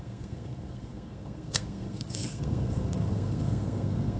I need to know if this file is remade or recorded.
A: remade